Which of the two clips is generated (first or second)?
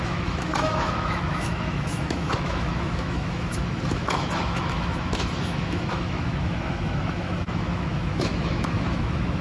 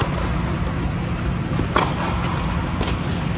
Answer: first